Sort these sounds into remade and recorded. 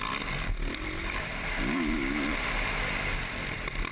remade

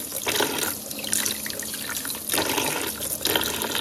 recorded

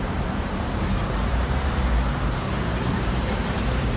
remade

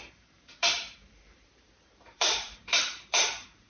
remade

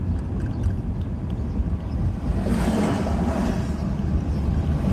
recorded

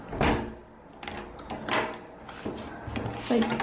recorded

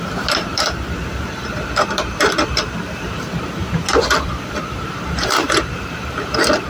remade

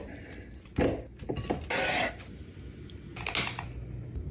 recorded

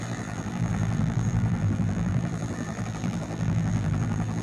remade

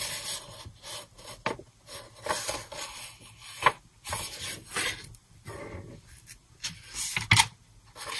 recorded